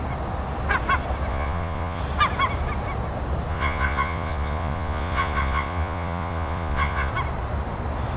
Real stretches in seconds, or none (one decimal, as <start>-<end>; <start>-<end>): 0.0-1.3; 2.0-3.5; 7.1-8.2